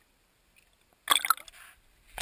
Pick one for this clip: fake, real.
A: real